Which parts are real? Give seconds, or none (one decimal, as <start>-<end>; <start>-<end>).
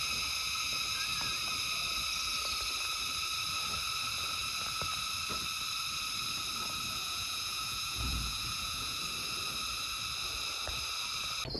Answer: 0.0-7.0; 9.0-11.6